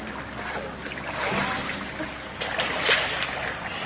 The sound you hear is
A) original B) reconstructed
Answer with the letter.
A